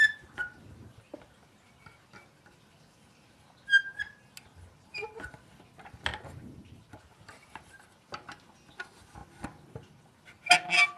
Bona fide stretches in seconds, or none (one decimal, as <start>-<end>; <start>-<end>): 0.0-6.1; 6.9-11.0